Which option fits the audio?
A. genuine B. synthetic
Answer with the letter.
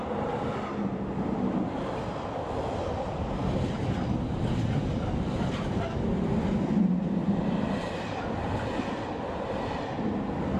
A